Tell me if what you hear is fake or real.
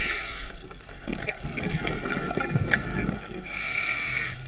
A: fake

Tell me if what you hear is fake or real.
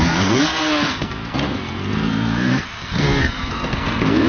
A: fake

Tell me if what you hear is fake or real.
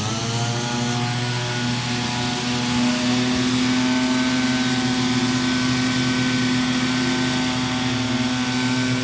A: real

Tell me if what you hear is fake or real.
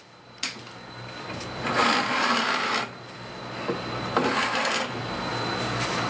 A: real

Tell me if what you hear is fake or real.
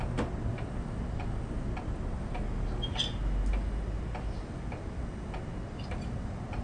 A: real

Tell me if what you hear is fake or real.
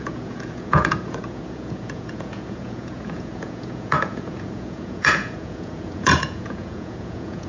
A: fake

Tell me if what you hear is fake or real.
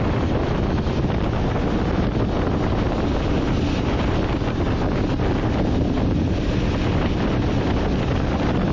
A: real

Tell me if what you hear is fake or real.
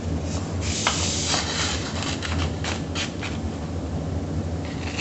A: real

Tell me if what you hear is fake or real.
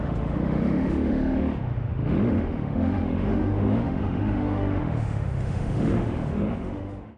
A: fake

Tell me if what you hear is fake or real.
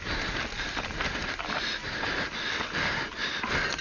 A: real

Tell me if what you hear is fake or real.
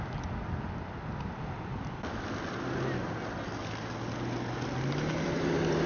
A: real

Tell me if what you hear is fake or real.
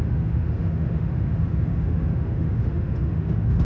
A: fake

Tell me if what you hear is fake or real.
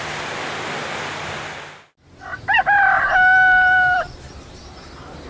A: real